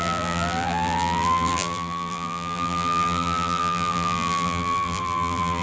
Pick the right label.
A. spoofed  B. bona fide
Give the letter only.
A